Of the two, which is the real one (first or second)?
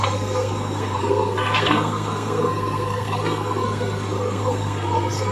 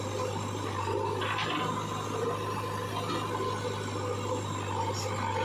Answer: second